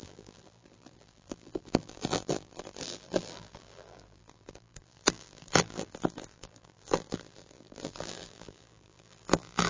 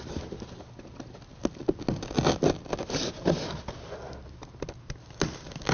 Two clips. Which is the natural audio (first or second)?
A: second